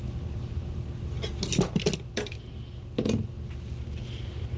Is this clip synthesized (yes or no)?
no